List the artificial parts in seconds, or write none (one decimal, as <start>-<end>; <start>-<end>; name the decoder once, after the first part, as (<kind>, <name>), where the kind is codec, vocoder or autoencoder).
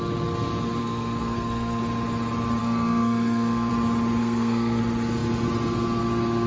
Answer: 0.8-1.8 (codec, SNAC); 2.6-3.7; 4.2-4.8